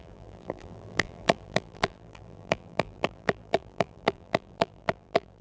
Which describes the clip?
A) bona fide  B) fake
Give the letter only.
B